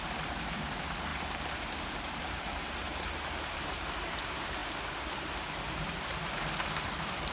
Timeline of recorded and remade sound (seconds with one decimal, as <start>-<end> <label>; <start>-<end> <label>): 0.0-7.3 remade